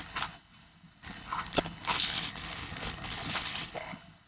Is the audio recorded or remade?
remade